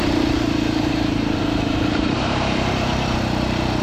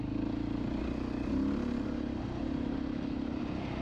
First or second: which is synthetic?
first